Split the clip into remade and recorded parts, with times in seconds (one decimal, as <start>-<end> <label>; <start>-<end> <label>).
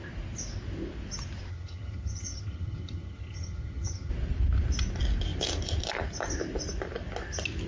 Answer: 0.0-1.5 recorded; 1.5-4.1 remade; 4.1-7.7 recorded